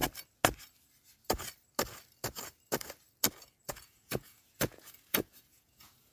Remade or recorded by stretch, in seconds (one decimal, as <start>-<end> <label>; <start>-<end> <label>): 0.0-3.7 recorded; 3.7-6.1 remade